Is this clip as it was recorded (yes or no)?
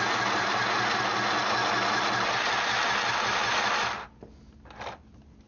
yes